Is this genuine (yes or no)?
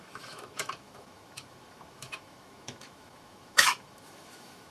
no